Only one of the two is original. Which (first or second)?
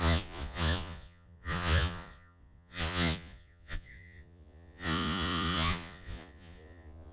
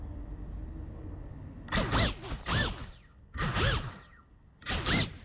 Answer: second